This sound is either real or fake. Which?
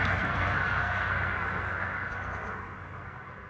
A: fake